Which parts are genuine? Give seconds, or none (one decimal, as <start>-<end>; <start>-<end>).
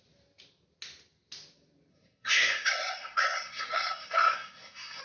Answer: 0.0-1.9